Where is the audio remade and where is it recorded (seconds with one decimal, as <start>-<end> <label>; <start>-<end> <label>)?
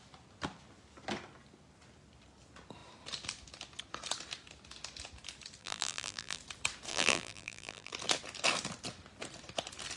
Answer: 0.0-5.6 recorded; 5.6-6.4 remade; 6.4-6.9 recorded; 6.9-7.9 remade; 7.9-10.0 recorded